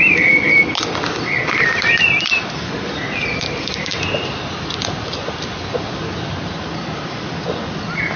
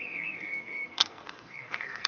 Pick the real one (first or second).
first